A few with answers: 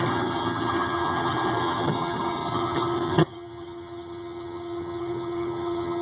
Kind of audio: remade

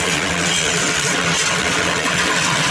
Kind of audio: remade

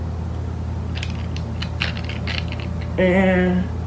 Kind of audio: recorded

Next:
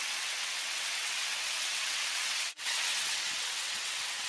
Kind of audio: remade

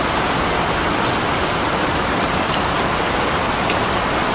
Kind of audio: recorded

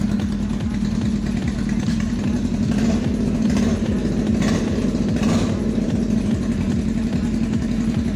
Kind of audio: recorded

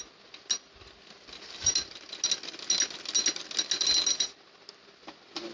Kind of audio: recorded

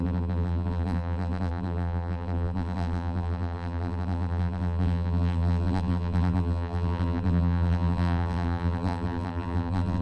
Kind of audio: remade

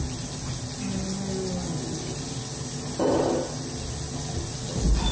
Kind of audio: recorded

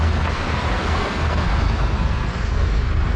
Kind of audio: remade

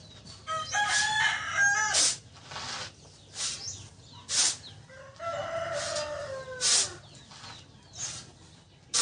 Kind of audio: recorded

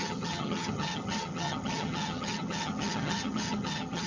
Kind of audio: remade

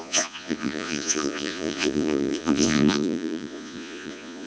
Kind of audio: remade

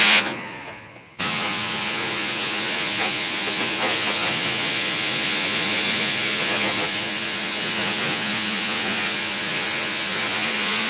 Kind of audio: remade